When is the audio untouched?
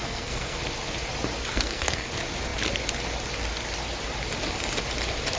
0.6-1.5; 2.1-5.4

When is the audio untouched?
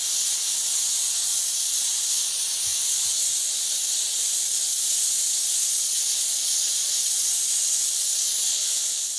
0.0-8.5